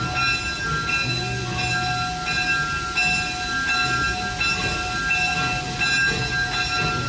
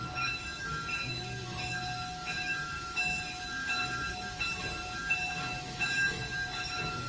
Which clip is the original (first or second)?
first